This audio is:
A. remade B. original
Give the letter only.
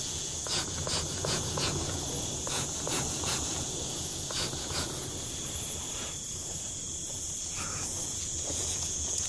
A